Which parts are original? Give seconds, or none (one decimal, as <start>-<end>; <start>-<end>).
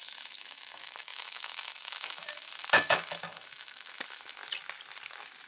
4.4-5.5